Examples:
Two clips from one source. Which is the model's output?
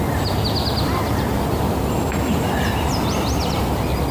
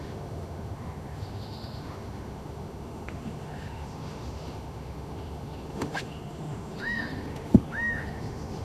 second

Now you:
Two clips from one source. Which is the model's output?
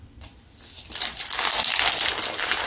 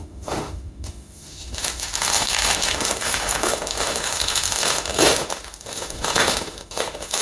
second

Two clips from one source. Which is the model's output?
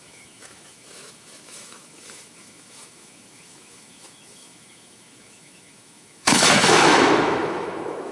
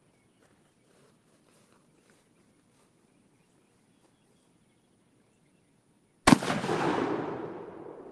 first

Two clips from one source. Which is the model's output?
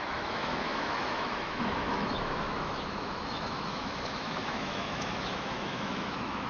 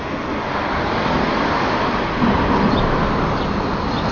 first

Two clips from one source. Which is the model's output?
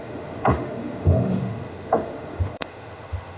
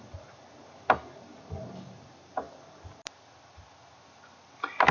first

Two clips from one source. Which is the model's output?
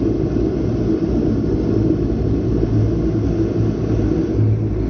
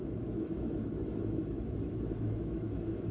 second